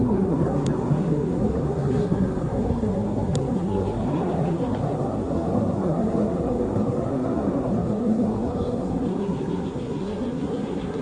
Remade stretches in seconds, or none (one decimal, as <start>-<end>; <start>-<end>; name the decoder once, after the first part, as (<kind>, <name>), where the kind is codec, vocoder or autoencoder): 0.0-11.0 (codec, SNAC)